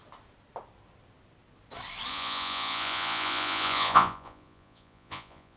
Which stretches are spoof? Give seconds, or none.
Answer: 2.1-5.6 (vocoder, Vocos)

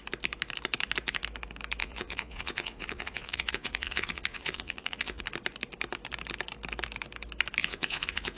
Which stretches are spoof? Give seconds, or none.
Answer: 1.8-5.2 (vocoder, Vocos); 7.6-8.4

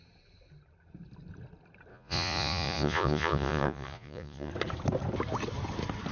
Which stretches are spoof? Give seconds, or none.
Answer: 1.9-4.5 (vocoder, Vocos)

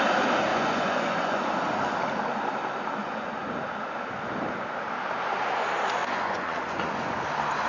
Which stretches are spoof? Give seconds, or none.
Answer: 0.5-1.4 (vocoder, Vocos); 3.0-3.6; 6.0-7.2

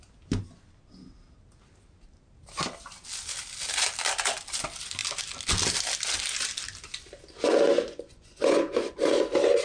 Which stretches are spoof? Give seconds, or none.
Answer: 7.7-9.0 (vocoder, Vocos)

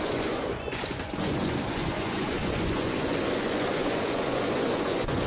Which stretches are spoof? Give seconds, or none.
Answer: 0.0-5.3 (vocoder, Vocos)